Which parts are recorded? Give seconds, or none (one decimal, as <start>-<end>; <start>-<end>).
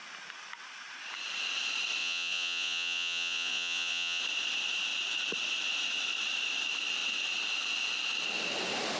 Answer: 0.0-2.0; 4.2-9.0